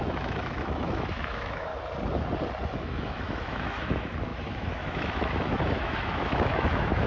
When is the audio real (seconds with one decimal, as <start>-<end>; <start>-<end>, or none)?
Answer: 1.7-2.8